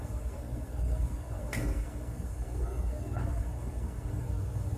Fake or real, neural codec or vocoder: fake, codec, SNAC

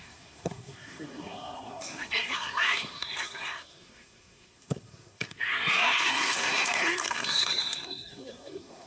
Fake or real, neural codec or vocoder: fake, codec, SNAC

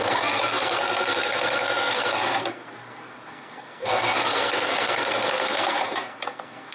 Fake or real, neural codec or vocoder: fake, codec, SNAC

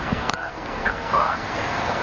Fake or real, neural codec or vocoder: fake, codec, SNAC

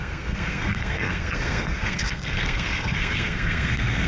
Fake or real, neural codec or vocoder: fake, codec, SNAC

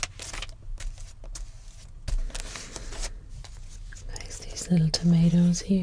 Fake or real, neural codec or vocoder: real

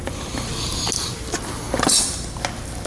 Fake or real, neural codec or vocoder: real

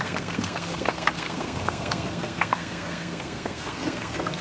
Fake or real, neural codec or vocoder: fake, codec, SNAC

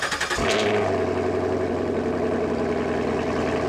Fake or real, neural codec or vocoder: real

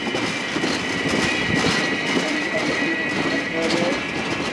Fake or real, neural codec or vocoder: real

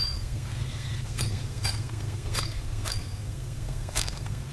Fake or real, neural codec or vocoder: fake, codec, SNAC